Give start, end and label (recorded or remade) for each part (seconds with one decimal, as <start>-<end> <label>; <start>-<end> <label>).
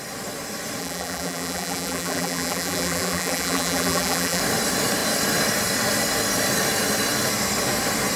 0.0-0.8 recorded; 0.8-4.4 remade; 4.4-8.2 recorded